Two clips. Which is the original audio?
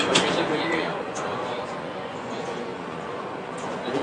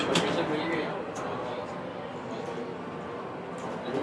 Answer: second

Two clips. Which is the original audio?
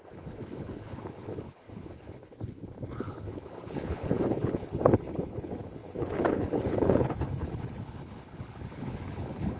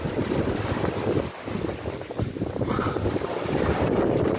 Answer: second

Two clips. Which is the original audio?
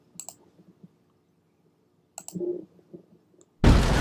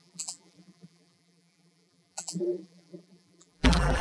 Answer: first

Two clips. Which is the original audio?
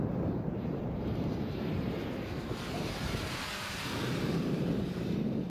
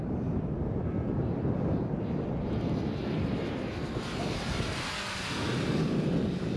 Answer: second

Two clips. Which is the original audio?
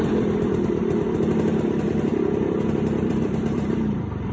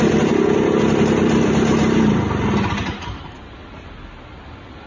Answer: second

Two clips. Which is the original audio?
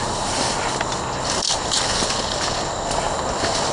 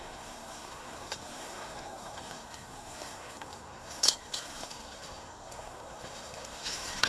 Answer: first